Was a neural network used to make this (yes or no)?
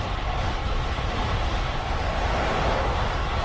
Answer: yes